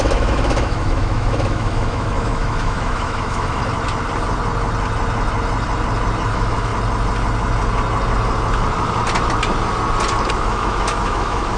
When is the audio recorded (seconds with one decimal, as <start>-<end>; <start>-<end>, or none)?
3.6-6.3; 6.7-10.3